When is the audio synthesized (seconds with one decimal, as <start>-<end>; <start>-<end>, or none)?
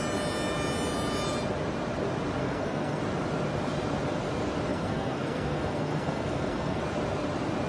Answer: 2.4-3.0; 4.7-6.8